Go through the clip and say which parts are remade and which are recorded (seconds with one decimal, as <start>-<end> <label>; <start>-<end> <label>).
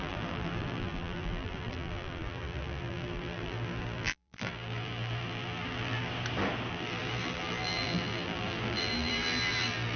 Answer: 0.0-6.1 remade; 6.1-6.7 recorded; 6.7-10.0 remade